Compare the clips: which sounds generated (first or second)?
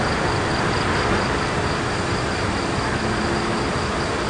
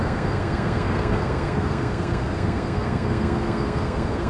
second